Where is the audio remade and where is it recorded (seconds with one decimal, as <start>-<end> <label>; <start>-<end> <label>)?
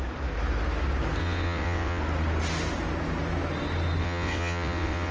0.0-1.2 recorded; 1.2-2.0 remade; 2.0-4.0 recorded; 4.0-5.1 remade